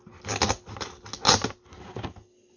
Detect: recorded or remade recorded